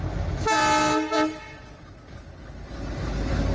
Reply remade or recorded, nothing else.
recorded